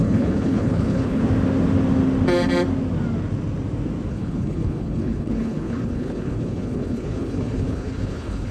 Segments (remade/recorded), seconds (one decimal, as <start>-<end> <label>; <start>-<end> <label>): 0.0-1.2 remade; 1.2-4.1 recorded; 4.1-8.5 remade